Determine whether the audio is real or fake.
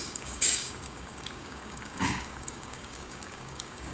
fake